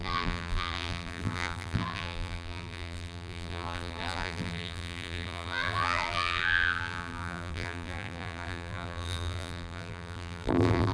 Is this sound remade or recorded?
remade